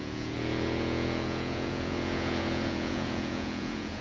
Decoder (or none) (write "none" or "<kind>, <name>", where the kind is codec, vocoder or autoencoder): vocoder, Vocos